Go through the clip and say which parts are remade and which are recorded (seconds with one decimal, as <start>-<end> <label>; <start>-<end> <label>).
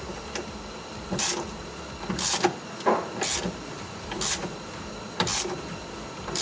0.0-6.4 recorded